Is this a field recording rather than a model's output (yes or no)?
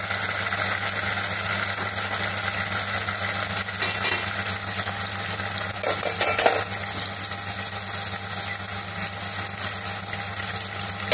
yes